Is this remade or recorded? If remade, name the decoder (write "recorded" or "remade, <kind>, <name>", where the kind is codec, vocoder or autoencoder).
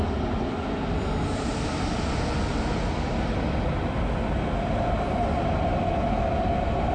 recorded